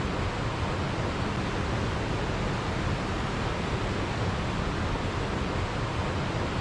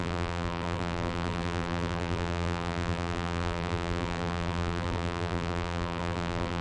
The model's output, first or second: second